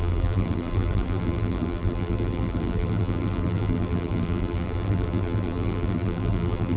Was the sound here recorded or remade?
remade